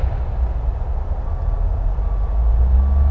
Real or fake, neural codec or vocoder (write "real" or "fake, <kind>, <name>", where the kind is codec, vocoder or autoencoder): real